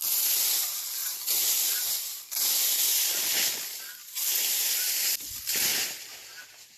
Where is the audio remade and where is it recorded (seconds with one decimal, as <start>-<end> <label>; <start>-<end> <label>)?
0.0-1.0 recorded; 1.0-2.2 remade; 2.2-4.0 recorded; 4.0-4.7 remade; 4.7-5.7 recorded; 5.7-6.8 remade